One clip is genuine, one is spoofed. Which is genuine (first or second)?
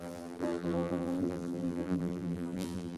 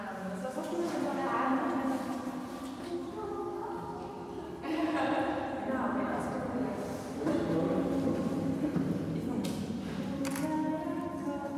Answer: second